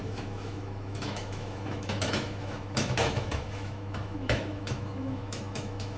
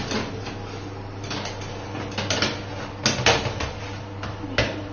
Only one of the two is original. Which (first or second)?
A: second